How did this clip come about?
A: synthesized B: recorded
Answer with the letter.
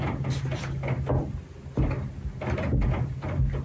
B